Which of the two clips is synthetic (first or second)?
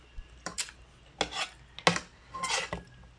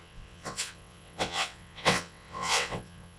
second